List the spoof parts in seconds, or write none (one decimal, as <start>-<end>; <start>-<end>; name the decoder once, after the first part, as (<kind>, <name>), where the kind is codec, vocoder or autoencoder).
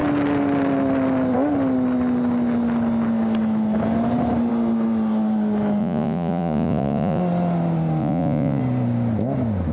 5.8-7.2 (vocoder, Vocos); 8.0-8.6